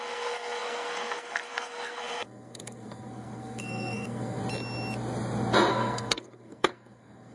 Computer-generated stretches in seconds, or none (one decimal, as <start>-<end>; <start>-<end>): 0.0-4.4; 5.7-7.3